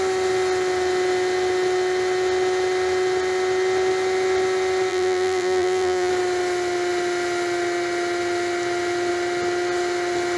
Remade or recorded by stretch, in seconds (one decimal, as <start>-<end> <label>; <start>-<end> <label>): 0.0-4.9 recorded; 4.9-6.1 remade; 6.1-10.4 recorded